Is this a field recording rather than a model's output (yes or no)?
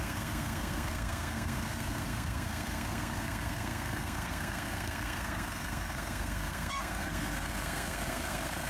no